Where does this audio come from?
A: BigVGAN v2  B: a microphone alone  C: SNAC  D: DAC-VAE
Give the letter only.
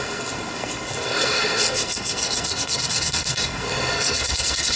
C